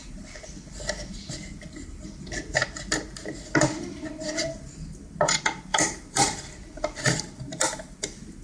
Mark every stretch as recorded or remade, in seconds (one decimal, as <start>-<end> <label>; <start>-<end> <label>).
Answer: 0.0-2.6 remade; 2.6-3.8 recorded; 3.8-8.4 remade